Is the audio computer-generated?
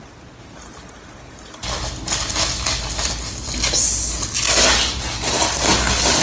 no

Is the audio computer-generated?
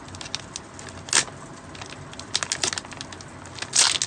no